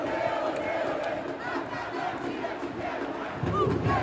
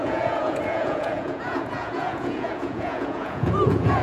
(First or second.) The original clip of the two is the first